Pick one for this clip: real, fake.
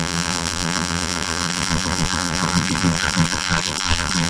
fake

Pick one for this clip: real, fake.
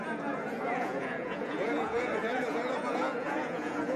fake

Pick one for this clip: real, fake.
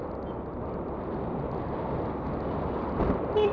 real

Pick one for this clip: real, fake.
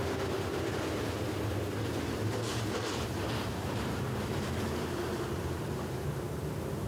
fake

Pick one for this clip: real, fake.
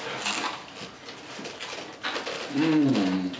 real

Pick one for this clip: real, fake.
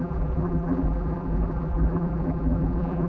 fake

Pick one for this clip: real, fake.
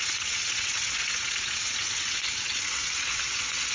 fake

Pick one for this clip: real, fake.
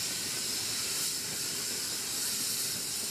real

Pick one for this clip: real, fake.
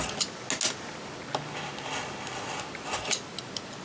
real